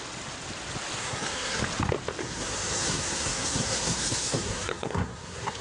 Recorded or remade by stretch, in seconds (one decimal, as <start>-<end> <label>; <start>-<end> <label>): 0.0-1.0 recorded; 1.0-1.6 remade; 1.6-2.2 recorded; 2.2-5.6 remade